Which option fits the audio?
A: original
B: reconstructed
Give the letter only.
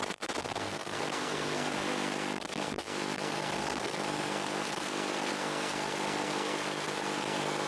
B